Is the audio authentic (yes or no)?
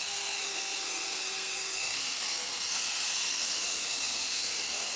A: no